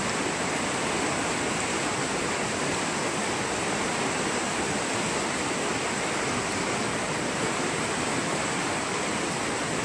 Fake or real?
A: real